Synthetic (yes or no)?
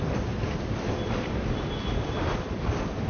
yes